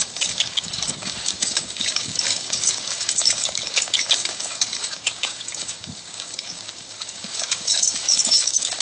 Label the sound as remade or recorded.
remade